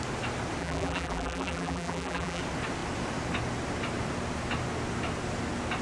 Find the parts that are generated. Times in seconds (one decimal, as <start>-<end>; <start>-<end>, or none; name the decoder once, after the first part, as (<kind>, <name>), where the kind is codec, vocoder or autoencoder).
0.6-2.4 (vocoder, BigVGAN v2)